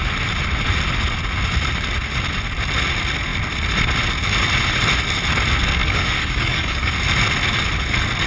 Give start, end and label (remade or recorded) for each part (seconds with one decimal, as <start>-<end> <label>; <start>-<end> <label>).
0.0-5.8 recorded; 5.8-6.9 remade; 6.9-8.3 recorded